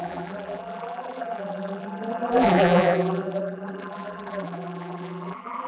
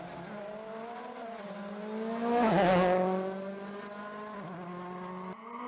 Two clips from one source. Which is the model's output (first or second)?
first